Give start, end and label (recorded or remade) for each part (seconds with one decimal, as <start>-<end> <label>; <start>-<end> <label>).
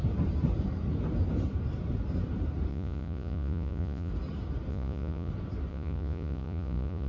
0.0-2.7 recorded; 2.7-4.1 remade; 4.1-4.7 recorded; 4.7-5.3 remade; 5.3-5.7 recorded; 5.7-7.1 remade